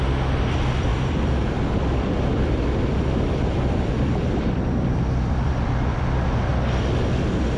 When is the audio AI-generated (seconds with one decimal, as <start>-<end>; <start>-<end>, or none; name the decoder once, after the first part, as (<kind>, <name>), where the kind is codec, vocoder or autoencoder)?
0.0-6.5 (vocoder, BigVGAN v2)